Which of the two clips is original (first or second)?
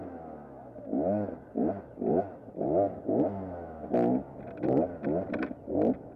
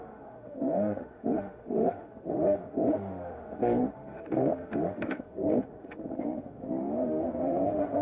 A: first